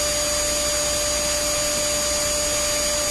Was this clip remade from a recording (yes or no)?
no